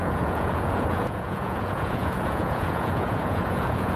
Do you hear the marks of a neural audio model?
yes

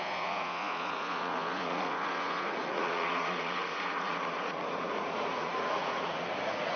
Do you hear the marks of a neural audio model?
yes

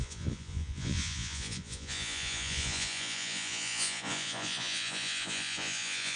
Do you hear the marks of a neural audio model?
yes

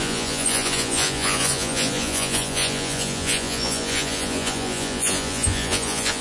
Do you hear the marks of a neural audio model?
yes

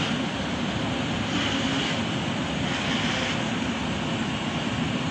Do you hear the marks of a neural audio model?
no